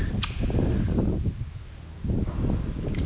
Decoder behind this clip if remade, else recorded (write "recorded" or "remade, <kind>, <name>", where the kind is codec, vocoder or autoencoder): recorded